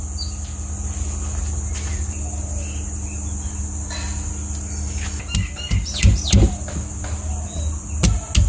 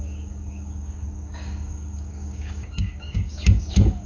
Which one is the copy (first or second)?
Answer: second